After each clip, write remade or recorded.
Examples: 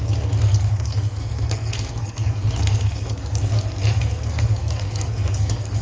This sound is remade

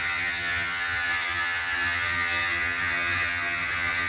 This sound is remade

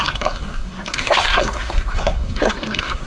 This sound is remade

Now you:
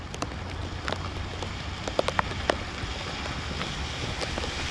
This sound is recorded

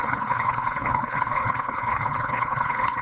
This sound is remade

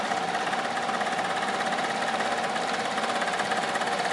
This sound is recorded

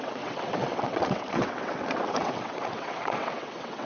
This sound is remade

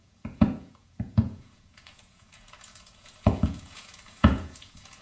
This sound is remade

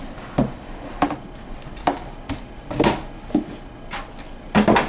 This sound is recorded